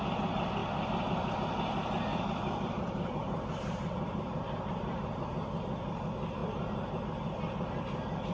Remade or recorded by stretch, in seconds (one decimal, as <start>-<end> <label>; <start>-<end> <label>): 0.0-2.1 recorded; 2.1-5.3 remade; 5.3-6.4 recorded; 6.4-7.0 remade; 7.0-8.3 recorded